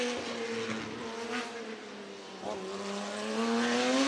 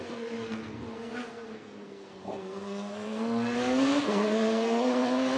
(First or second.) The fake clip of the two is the second